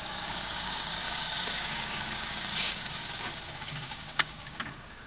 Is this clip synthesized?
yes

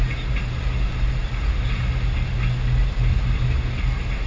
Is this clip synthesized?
no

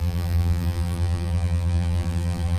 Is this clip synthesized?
yes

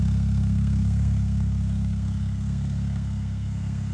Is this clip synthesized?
yes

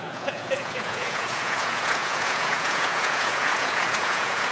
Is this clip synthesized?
yes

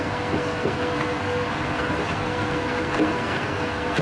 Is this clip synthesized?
yes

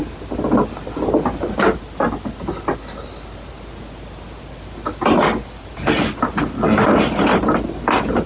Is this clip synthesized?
no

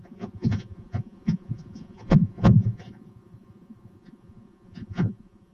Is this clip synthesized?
yes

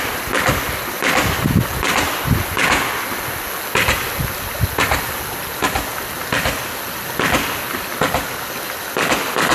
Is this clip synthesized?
no